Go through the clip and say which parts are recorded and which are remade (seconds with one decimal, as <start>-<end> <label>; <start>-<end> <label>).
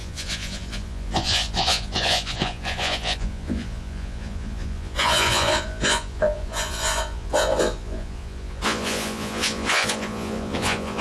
0.0-11.0 remade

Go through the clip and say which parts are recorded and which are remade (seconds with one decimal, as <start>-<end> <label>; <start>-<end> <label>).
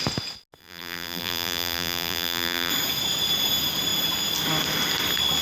0.0-0.6 recorded; 0.6-2.7 remade; 2.7-5.4 recorded